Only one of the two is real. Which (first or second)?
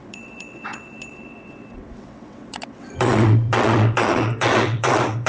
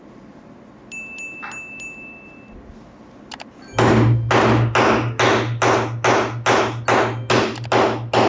second